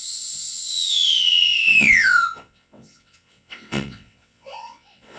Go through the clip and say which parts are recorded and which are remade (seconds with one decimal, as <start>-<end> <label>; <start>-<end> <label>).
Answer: 0.0-5.2 remade